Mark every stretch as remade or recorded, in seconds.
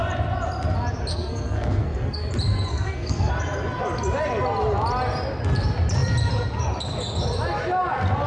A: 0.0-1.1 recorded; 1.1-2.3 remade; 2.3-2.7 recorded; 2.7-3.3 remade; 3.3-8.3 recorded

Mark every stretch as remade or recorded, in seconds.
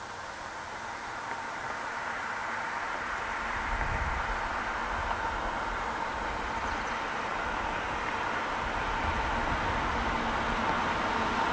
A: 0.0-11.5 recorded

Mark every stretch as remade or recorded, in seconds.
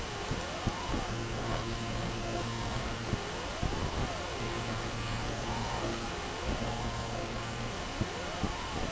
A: 0.0-1.1 recorded; 1.1-3.1 remade; 3.1-4.4 recorded; 4.4-6.1 remade; 6.1-6.6 recorded; 6.6-7.7 remade; 7.7-8.9 recorded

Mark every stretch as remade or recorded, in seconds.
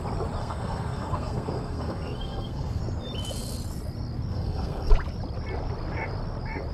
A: 0.0-0.4 recorded; 0.4-2.8 remade; 2.8-4.3 recorded; 4.3-4.9 remade; 4.9-6.7 recorded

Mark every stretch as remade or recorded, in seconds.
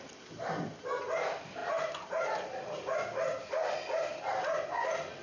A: 0.0-5.2 recorded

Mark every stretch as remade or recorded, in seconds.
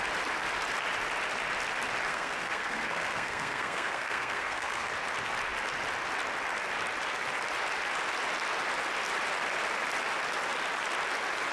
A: 0.0-2.1 recorded; 2.1-4.9 remade; 4.9-11.5 recorded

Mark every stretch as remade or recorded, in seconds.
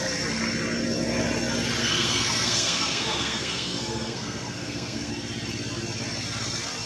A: 0.0-1.8 recorded; 1.8-5.1 remade; 5.1-6.9 recorded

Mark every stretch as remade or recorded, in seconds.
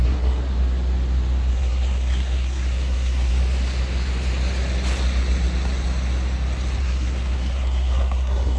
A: 0.0-0.4 remade; 0.4-1.5 recorded; 1.5-3.3 remade; 3.3-6.8 recorded; 6.8-8.6 remade